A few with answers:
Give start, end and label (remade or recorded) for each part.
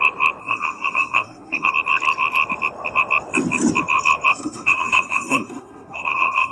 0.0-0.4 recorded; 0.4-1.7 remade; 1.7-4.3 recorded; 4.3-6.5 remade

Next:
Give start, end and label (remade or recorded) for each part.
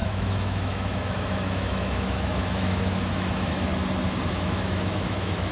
0.0-3.7 remade; 3.7-4.3 recorded; 4.3-5.5 remade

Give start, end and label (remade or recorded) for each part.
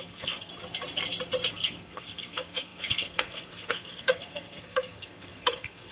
0.0-0.5 remade; 0.5-1.5 recorded; 1.5-5.9 remade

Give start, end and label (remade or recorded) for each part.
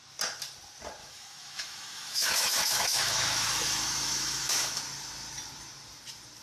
0.0-1.0 recorded; 1.0-4.8 remade; 4.8-6.4 recorded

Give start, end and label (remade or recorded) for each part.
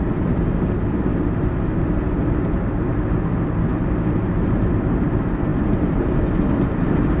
0.0-1.1 recorded; 1.1-2.1 remade; 2.1-5.5 recorded; 5.5-6.1 remade; 6.1-7.2 recorded